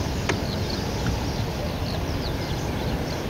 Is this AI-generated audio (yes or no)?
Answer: no